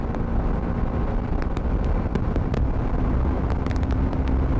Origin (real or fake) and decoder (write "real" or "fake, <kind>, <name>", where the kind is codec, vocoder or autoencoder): real